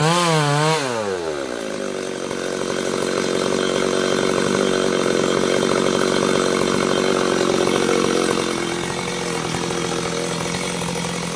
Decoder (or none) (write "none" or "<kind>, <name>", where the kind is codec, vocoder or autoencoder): none